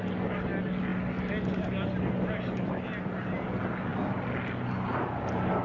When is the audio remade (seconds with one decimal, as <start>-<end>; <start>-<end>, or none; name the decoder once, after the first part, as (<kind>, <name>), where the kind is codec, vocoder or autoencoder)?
none